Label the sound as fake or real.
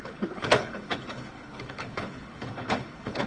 fake